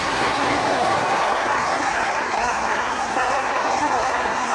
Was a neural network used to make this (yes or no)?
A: yes